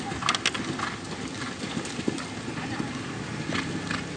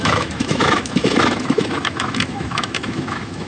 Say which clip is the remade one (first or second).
second